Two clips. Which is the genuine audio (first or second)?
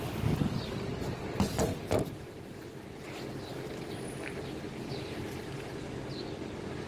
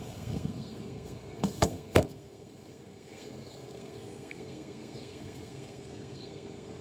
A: first